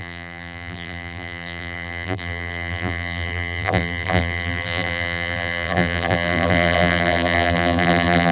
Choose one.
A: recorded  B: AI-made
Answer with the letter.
B